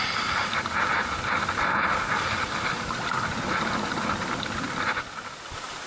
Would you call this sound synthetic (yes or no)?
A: no